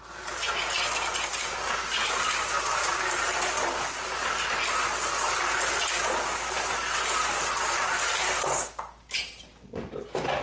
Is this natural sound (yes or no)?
yes